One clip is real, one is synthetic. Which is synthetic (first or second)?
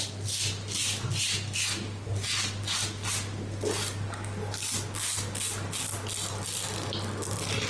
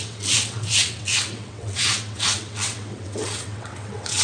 second